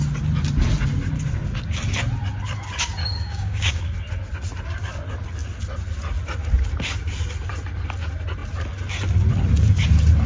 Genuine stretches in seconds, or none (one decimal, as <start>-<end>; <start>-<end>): 0.0-3.0; 3.9-10.3